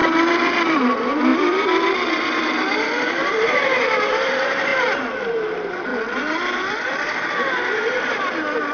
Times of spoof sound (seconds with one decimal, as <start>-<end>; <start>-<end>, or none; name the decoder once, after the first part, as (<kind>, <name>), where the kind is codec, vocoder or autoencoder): 0.0-4.7 (vocoder, BigVGAN v2); 5.4-5.9; 6.9-8.7